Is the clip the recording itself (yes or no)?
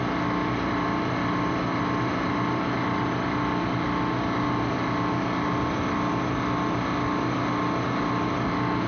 yes